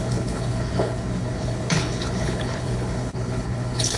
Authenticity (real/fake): fake